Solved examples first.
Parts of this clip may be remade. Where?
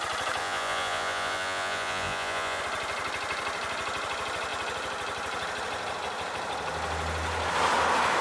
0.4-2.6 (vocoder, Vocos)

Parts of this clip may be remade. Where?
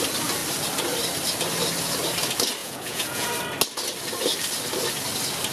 2.6-3.3 (vocoder, Vocos)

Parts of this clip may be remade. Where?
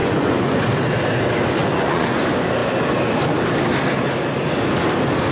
0.0-0.6 (vocoder, Vocos); 1.6-2.2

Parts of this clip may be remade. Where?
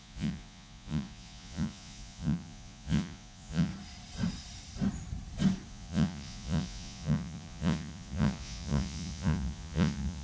0.0-3.7 (vocoder, Vocos); 5.7-10.2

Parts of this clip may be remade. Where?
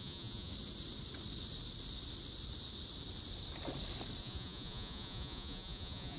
0.0-0.5 (vocoder, Vocos); 4.2-6.2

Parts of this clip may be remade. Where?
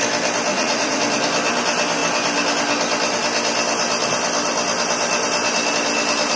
0.5-1.0 (vocoder, Vocos)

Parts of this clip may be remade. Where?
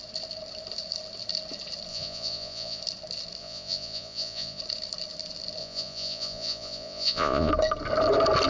1.9-2.8 (vocoder, Vocos); 3.4-4.6; 5.6-7.5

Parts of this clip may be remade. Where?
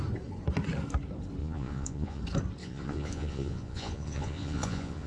1.4-2.2 (vocoder, Vocos); 2.6-5.1